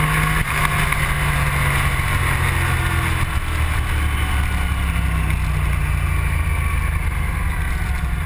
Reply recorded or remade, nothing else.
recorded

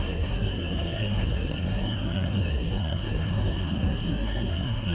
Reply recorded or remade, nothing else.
remade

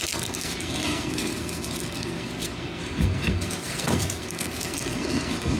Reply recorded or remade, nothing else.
remade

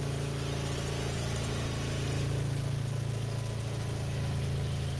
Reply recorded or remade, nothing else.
recorded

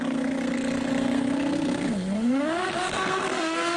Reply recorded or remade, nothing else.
remade